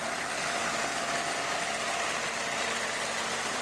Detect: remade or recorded recorded